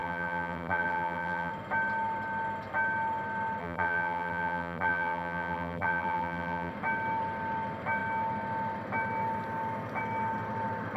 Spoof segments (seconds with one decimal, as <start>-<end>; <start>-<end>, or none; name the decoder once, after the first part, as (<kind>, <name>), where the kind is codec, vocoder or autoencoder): 0.0-1.5 (vocoder, BigVGAN v2); 3.6-6.7